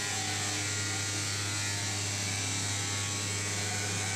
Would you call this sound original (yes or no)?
yes